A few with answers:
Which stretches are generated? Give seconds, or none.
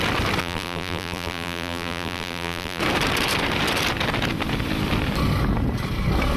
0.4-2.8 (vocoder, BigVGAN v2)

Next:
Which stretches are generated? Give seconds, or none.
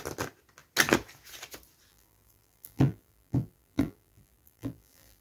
1.9-5.2 (vocoder, BigVGAN v2)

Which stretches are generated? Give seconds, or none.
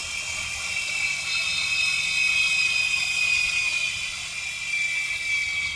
0.0-1.3 (vocoder, BigVGAN v2)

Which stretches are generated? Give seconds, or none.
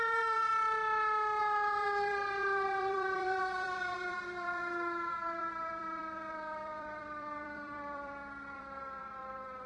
0.0-0.5 (vocoder, BigVGAN v2); 1.4-4.6; 5.1-9.7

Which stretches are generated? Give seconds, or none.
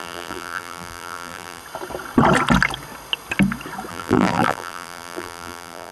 0.0-1.6 (vocoder, BigVGAN v2); 3.9-5.9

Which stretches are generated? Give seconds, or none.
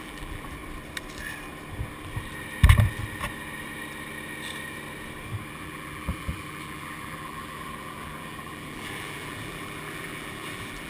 0.0-0.6 (vocoder, BigVGAN v2); 5.5-10.9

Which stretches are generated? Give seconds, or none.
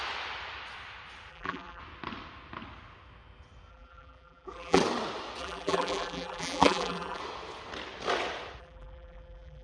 1.3-1.8 (vocoder, BigVGAN v2); 3.7-4.8; 5.4-7.2; 8.6-9.6